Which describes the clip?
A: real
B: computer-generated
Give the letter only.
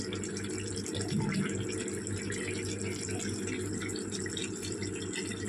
A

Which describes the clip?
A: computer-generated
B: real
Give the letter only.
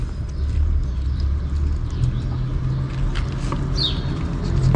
B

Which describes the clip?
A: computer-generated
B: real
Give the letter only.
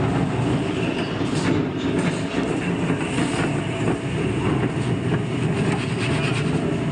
B